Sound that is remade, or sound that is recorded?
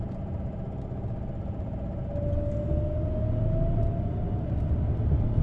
recorded